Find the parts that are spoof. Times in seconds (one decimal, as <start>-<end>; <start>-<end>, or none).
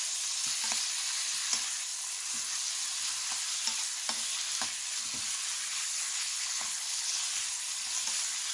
5.7-7.2